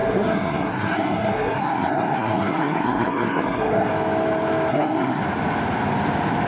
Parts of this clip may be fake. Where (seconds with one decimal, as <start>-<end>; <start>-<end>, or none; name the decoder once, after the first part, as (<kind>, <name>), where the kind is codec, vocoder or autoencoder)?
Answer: 0.0-3.9 (codec, SNAC); 4.7-5.2